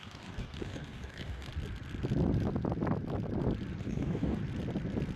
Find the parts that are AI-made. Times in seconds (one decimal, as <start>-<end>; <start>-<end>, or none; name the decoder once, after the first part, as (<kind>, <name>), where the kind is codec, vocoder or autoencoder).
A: 0.0-1.5 (codec, DAC); 3.8-4.4